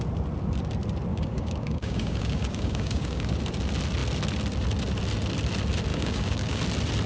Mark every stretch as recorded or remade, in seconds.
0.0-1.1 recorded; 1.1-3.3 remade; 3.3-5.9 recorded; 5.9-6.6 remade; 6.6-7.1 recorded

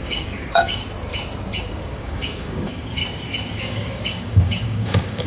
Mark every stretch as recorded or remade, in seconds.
0.0-0.8 remade; 0.8-1.6 recorded; 1.6-3.0 remade; 3.0-3.6 recorded; 3.6-5.3 remade

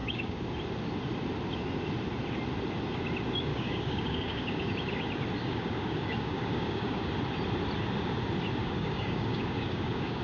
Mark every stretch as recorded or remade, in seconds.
0.0-0.5 remade; 0.5-3.5 recorded; 3.5-4.7 remade; 4.7-5.4 recorded; 5.4-7.1 remade; 7.1-8.6 recorded; 8.6-10.2 remade

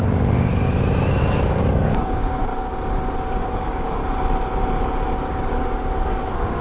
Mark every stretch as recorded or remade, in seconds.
0.0-0.5 remade; 0.5-1.2 recorded; 1.2-2.5 remade; 2.5-3.2 recorded; 3.2-4.0 remade; 4.0-5.3 recorded; 5.3-6.6 remade

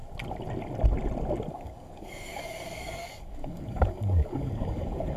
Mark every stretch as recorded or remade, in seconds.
0.0-1.5 recorded; 1.5-5.2 remade

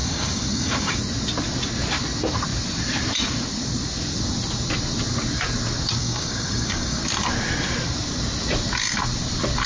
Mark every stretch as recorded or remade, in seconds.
0.0-1.0 remade; 1.0-6.0 recorded; 6.0-7.0 remade; 7.0-9.7 recorded

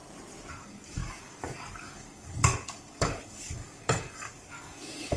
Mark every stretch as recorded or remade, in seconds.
0.0-0.5 recorded; 0.5-5.2 remade